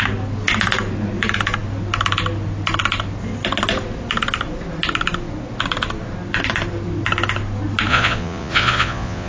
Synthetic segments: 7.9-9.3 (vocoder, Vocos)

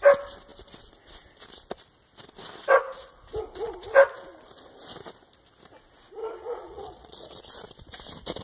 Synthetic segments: 6.2-7.4 (vocoder, Vocos)

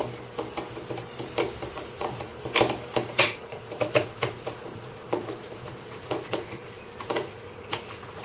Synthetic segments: 1.7-2.3 (vocoder, Vocos); 3.0-8.2

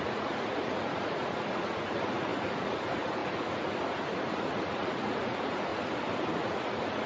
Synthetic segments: 0.0-5.7 (vocoder, Vocos); 6.3-7.1

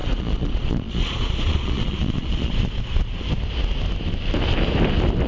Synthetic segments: 0.0-3.2 (vocoder, Vocos)

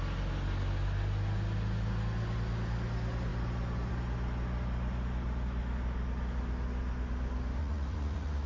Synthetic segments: 7.6-8.5 (vocoder, Vocos)